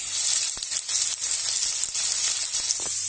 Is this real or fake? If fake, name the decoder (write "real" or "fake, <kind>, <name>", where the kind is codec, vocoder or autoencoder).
real